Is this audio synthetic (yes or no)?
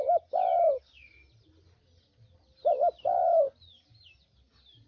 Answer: no